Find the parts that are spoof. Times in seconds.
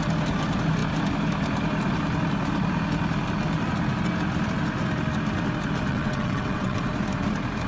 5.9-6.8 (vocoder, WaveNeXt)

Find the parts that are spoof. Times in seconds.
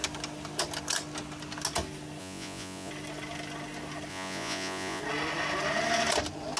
2.2-2.9 (vocoder, Vocos); 4.1-5.0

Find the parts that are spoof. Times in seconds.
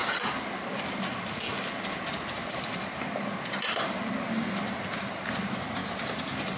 none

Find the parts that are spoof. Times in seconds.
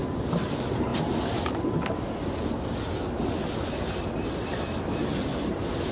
none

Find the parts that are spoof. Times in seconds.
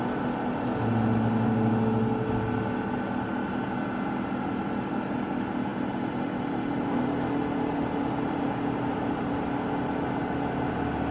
none